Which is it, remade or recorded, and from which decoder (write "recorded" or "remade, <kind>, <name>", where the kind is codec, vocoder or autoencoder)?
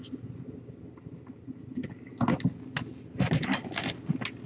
recorded